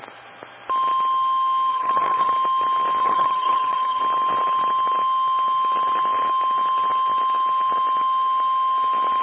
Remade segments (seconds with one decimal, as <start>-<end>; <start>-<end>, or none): 1.7-2.3; 3.0-4.0